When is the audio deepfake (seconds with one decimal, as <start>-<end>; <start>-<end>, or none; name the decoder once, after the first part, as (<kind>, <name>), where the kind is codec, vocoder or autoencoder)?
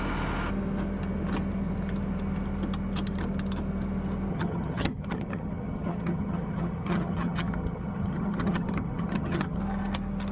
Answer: 4.3-9.6 (vocoder, HiFi-GAN)